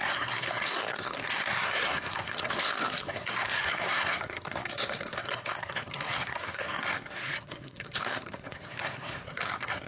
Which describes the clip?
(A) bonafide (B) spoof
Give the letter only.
B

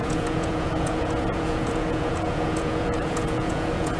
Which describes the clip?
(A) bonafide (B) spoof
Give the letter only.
B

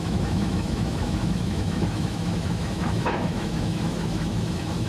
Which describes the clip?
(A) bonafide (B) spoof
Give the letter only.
B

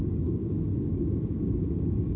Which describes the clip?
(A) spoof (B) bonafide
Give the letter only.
A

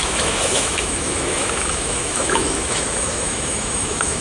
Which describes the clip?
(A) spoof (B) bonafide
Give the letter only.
A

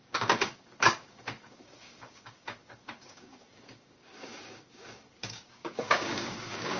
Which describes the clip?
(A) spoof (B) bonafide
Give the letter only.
A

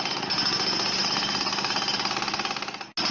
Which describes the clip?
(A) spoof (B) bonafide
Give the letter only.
B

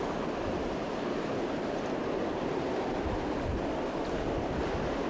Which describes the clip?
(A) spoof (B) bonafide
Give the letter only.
A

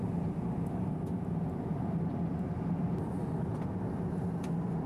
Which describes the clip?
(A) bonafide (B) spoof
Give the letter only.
A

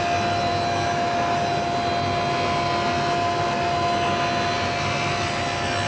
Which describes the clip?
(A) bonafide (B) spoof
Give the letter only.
A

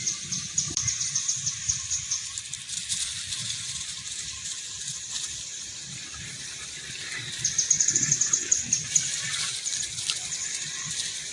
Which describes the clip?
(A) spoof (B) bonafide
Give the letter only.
A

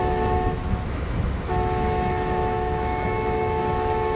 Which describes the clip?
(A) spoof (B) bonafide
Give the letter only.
A